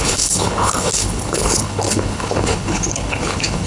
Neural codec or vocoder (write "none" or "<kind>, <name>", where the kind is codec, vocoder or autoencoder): codec, HILCodec